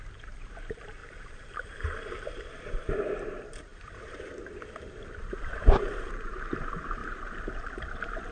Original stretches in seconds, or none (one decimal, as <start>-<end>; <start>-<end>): 3.7-4.9; 7.0-8.3